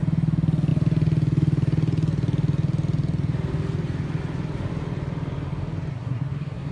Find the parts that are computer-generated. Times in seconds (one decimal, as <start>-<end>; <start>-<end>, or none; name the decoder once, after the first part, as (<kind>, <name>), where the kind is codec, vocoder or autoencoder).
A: 5.9-6.7 (codec, SNAC)